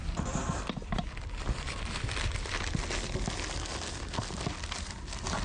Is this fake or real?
real